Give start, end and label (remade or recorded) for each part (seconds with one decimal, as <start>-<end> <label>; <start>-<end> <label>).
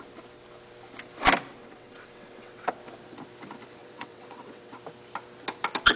0.0-1.6 recorded; 1.6-2.7 remade; 2.7-3.8 recorded; 3.8-4.7 remade; 4.7-6.0 recorded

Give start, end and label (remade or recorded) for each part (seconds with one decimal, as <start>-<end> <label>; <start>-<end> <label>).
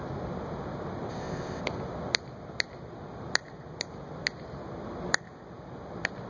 0.0-1.1 recorded; 1.1-1.6 remade; 1.6-6.3 recorded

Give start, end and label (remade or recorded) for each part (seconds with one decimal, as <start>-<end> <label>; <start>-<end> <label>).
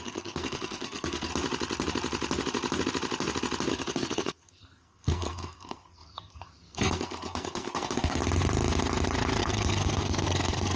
0.0-1.3 remade; 1.3-3.7 recorded; 3.7-8.2 remade; 8.2-9.4 recorded; 9.4-10.8 remade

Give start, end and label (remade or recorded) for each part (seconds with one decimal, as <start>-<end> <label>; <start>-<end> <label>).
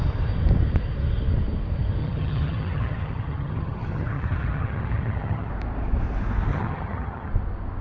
0.0-2.0 recorded; 2.0-5.5 remade; 5.5-6.5 recorded; 6.5-7.3 remade; 7.3-7.8 recorded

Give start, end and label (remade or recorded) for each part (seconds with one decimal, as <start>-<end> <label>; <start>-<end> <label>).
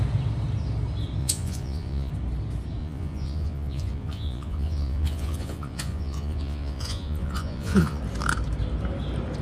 0.0-1.2 recorded; 1.2-2.1 remade; 2.1-2.8 recorded; 2.8-8.0 remade; 8.0-9.4 recorded